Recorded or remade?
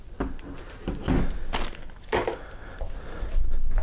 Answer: recorded